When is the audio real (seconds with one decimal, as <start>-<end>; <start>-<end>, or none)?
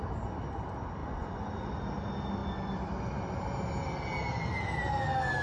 0.0-1.0; 1.7-5.4